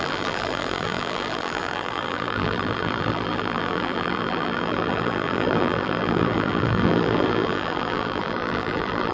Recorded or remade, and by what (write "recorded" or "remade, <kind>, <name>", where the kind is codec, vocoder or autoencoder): remade, vocoder, BigVGAN v2